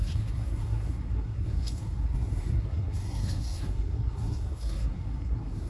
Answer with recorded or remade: remade